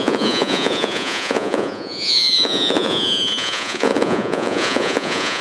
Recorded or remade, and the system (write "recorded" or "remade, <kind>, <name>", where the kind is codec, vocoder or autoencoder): remade, vocoder, Vocos